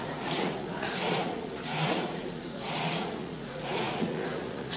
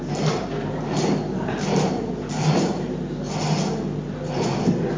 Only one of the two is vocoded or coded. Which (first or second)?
first